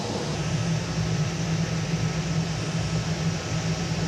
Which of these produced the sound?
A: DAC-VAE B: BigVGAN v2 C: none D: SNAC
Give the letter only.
C